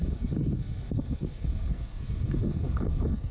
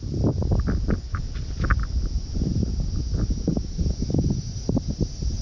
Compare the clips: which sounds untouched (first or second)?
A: second